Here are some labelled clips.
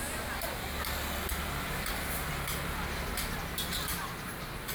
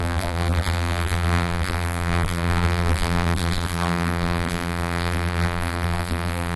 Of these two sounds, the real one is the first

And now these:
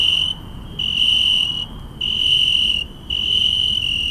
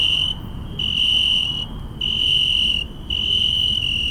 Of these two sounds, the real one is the second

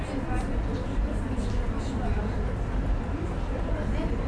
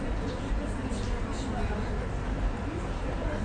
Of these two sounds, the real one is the second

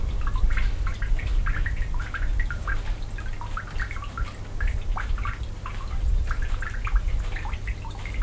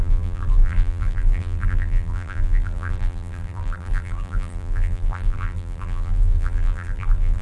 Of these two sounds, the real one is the first